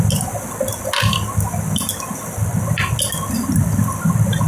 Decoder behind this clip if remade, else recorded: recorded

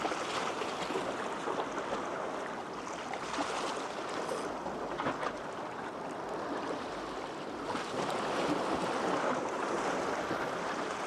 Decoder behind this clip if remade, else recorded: recorded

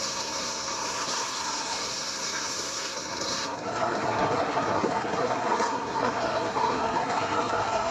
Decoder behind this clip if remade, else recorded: remade, codec, SNAC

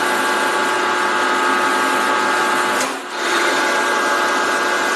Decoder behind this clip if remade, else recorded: recorded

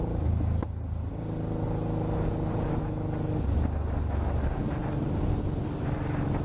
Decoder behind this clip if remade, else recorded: recorded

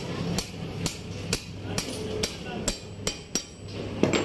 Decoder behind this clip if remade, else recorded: recorded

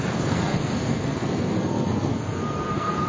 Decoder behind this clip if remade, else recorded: remade, codec, SNAC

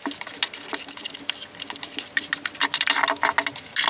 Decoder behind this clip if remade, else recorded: recorded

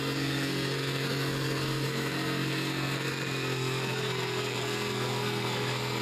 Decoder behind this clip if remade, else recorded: remade, codec, SNAC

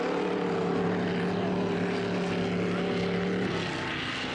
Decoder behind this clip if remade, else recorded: recorded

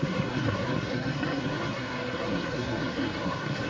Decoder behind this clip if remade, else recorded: remade, codec, SNAC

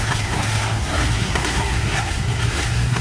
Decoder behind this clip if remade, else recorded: remade, codec, SNAC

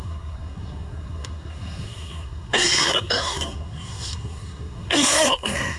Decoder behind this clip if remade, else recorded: remade, codec, SNAC